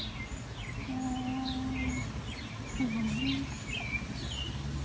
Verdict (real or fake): real